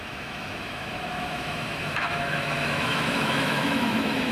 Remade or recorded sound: remade